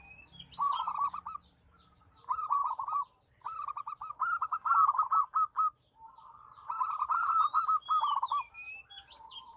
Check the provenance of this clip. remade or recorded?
recorded